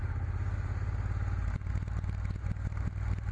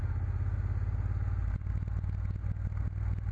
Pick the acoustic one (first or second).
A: second